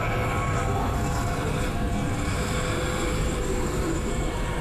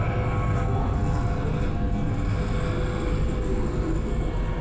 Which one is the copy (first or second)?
first